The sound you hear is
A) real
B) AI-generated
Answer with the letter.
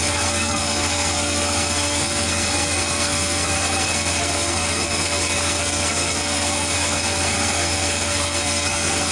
B